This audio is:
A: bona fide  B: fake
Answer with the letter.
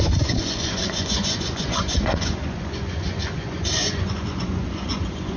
B